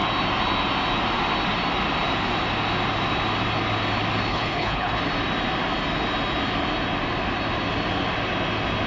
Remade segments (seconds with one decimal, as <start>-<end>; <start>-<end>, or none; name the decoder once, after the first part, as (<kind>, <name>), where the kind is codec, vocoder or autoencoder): 4.3-5.0 (codec, HILCodec)